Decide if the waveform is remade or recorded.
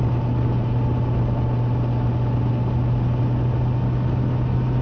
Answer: recorded